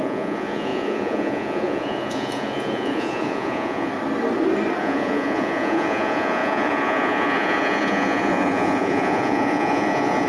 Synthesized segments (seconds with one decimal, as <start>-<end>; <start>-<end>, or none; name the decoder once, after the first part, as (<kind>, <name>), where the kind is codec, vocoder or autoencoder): 0.0-3.9 (vocoder, Vocos); 4.8-10.3